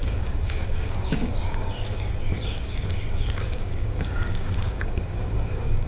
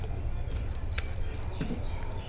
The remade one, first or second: first